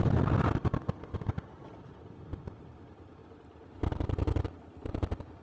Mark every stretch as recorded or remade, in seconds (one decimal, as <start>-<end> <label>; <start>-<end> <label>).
0.0-5.4 recorded